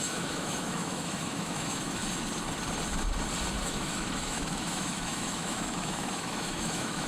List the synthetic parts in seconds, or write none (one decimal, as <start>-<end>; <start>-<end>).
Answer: 0.0-2.0; 3.6-7.1